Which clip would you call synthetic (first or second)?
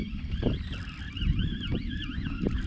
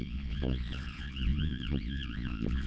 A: second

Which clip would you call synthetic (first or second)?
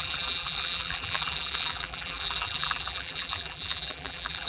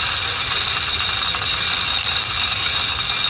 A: first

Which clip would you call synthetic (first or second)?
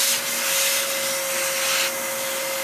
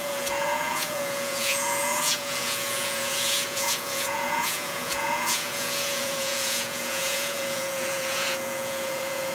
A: second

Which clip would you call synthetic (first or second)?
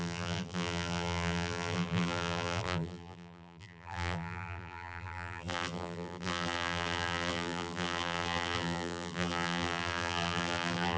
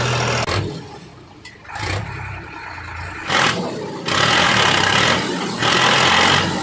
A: first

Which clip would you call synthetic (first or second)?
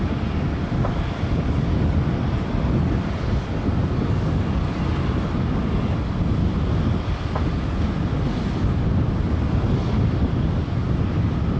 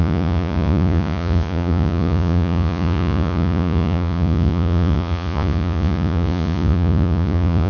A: second